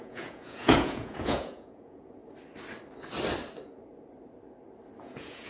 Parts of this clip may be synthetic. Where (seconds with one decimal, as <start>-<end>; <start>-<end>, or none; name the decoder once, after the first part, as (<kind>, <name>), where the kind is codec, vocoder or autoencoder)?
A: 0.0-2.2 (vocoder, Vocos); 5.0-5.5

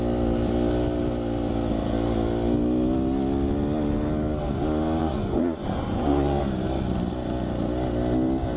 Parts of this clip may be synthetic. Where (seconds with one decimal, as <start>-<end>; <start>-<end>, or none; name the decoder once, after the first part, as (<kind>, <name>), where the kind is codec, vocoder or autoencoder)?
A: 5.0-6.4 (vocoder, Vocos)

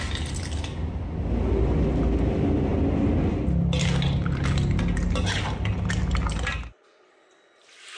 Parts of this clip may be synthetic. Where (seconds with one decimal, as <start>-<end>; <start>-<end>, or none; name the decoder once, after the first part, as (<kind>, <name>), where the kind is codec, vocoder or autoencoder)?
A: none

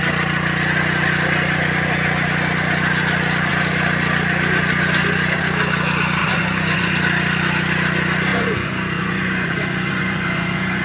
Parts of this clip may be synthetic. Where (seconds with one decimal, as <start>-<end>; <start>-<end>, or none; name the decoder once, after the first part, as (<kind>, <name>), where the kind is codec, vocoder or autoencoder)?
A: 6.2-6.9 (vocoder, Vocos); 8.3-10.8

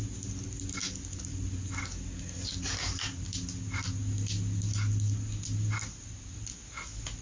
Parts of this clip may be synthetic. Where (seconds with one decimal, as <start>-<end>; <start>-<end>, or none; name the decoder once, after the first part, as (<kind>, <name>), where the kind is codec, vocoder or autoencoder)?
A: none

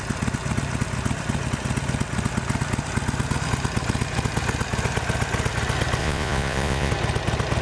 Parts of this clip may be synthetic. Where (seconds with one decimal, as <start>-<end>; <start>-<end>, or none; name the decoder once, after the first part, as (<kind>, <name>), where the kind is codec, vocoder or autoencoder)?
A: 6.0-6.9 (vocoder, Vocos)

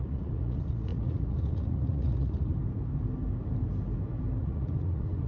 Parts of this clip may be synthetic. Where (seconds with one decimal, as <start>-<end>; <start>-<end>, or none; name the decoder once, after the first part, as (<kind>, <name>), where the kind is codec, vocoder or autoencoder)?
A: 0.0-2.5 (vocoder, Vocos); 4.4-5.3